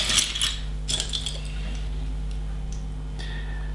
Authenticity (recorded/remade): recorded